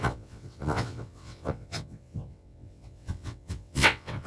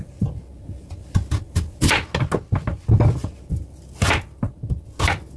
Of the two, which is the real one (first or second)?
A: second